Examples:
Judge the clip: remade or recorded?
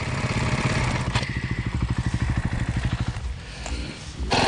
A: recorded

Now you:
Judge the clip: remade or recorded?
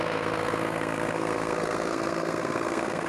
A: remade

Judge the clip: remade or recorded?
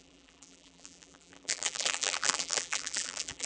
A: remade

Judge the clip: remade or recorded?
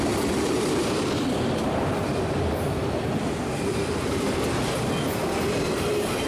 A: remade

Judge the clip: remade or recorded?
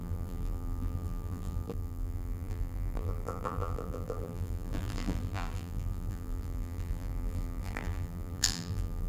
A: remade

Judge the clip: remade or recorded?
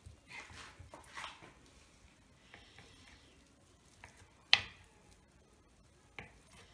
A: recorded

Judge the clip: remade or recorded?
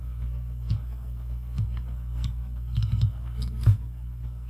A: remade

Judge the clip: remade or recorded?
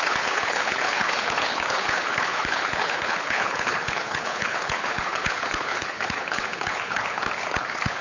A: remade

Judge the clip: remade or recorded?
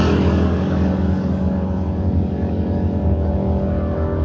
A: remade